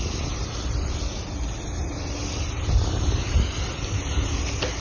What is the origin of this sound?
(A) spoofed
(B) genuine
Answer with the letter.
B